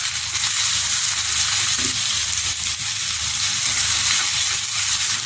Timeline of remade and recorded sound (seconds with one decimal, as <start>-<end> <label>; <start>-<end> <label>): 0.0-5.3 recorded